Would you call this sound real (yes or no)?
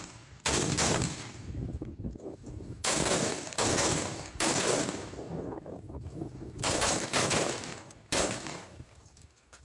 no